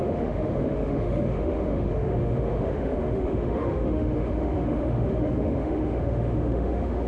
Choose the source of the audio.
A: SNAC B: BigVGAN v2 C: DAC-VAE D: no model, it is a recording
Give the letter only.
C